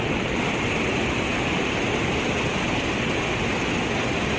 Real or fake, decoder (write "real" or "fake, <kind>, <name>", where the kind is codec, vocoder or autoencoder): real